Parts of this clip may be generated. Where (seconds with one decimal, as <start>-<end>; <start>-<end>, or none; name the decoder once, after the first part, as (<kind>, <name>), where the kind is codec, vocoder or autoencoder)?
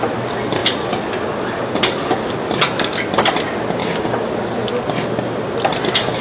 3.8-4.3 (codec, DAC)